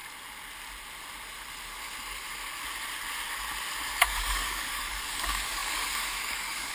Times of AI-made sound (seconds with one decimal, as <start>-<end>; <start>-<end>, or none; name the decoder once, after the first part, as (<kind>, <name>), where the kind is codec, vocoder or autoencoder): 4.0-6.7 (codec, DAC)